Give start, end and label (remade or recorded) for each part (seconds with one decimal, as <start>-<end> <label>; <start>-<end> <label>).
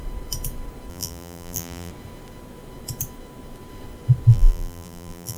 0.0-0.9 recorded; 0.9-1.9 remade; 1.9-4.3 recorded; 4.3-5.4 remade